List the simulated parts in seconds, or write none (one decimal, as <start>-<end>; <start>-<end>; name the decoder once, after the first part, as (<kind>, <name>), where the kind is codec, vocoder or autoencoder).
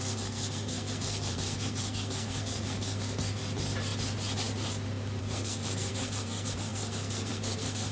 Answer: 0.0-3.4 (codec, SNAC); 5.2-7.9